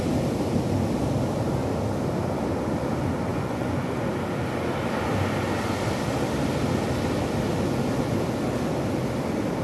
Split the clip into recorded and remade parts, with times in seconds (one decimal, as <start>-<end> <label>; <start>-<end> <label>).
0.0-3.3 recorded; 3.3-4.1 remade; 4.1-9.6 recorded